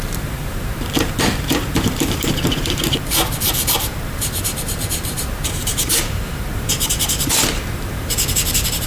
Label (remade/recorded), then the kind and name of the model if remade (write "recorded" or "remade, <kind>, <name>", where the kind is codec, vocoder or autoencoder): remade, vocoder, BigVGAN v2